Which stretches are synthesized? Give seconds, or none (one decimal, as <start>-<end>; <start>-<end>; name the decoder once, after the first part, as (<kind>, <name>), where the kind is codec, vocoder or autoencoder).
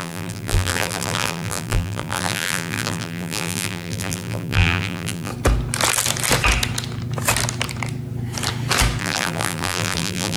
0.0-5.3 (vocoder, BigVGAN v2); 9.0-10.4